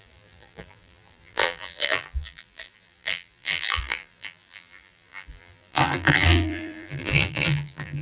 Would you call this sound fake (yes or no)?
yes